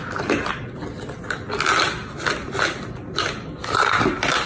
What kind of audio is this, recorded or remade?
recorded